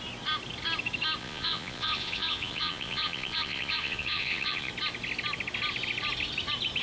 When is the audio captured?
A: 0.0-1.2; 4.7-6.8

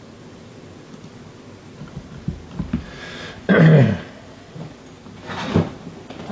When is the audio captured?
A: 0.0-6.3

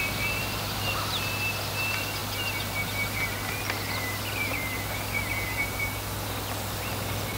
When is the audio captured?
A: 0.0-7.4

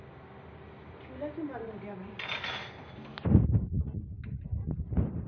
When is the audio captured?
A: 0.0-5.3

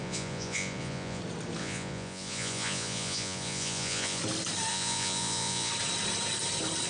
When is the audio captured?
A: 1.2-1.6; 4.2-4.7; 5.7-6.9